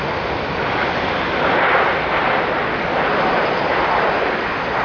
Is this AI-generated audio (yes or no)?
no